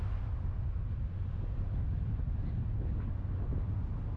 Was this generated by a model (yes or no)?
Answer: no